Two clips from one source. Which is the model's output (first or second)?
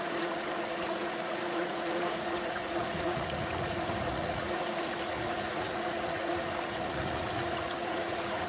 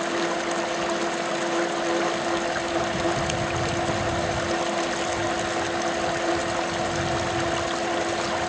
first